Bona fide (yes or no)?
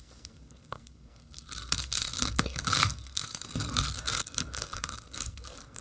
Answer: no